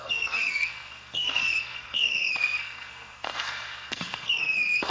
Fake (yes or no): yes